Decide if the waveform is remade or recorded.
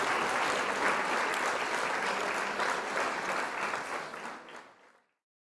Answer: recorded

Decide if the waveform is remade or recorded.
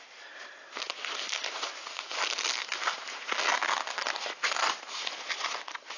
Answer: recorded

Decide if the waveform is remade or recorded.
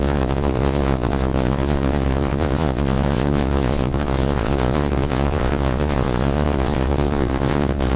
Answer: remade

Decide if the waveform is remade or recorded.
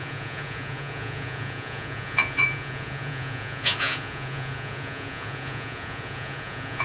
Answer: remade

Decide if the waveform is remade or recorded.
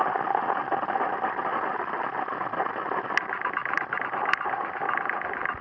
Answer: recorded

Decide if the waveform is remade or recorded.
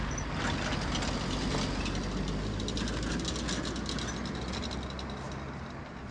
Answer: recorded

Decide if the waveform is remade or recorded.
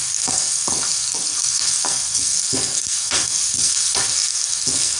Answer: remade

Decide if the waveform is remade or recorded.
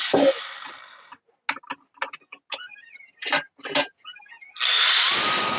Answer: recorded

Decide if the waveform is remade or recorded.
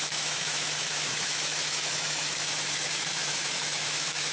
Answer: remade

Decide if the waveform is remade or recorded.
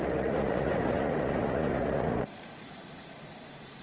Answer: remade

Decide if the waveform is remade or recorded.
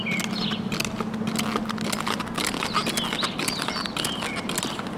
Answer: recorded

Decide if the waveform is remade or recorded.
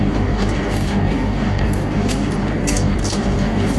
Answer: remade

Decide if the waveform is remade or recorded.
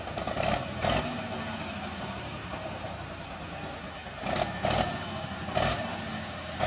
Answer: recorded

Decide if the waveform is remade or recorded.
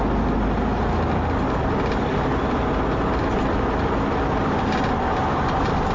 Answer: recorded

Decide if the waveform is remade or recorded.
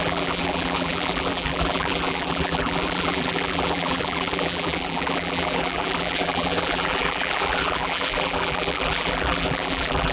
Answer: remade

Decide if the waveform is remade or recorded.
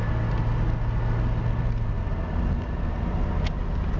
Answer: recorded